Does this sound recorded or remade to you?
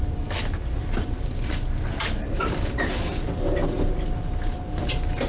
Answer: recorded